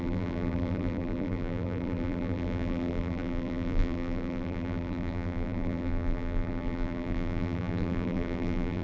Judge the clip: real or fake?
fake